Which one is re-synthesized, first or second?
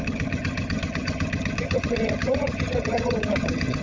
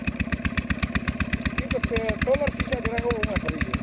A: first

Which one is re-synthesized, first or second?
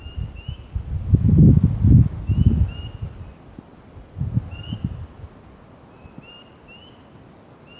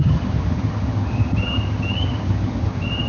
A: second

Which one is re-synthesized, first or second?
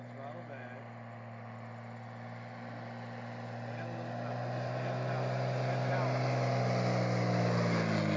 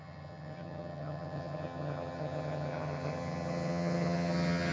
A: second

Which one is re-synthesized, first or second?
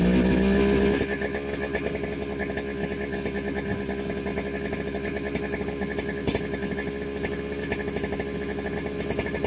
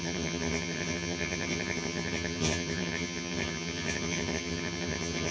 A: second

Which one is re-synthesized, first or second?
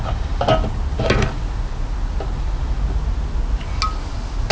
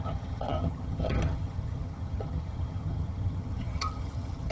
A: second